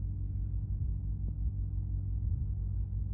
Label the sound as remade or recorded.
recorded